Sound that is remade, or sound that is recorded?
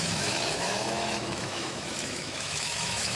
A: remade